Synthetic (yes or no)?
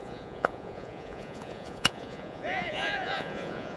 yes